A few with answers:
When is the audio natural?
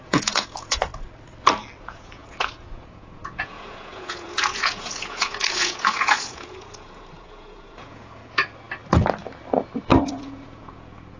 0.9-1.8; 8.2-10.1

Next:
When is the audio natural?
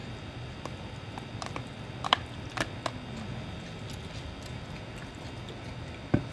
2.5-6.3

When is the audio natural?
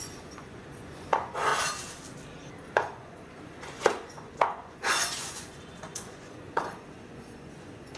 1.5-2.7